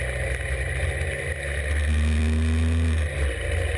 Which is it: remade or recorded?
recorded